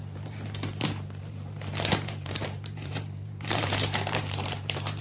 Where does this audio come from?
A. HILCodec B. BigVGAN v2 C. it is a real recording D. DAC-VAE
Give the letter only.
B